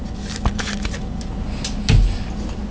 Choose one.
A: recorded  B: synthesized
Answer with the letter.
A